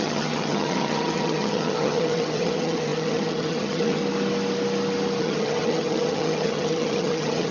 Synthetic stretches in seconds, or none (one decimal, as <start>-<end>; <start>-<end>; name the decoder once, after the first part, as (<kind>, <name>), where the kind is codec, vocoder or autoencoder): 0.0-4.0 (vocoder, HiFi-GAN); 5.2-7.5